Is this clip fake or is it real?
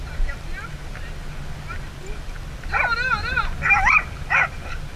real